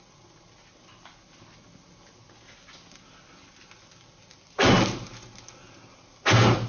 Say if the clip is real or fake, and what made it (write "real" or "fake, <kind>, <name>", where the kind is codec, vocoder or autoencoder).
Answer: real